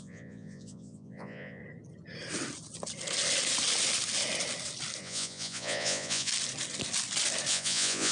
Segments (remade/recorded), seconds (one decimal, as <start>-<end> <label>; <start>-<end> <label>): 0.0-1.6 remade; 1.6-5.0 recorded; 5.0-6.3 remade; 6.3-7.5 recorded; 7.5-8.1 remade